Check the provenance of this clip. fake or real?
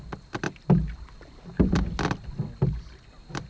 real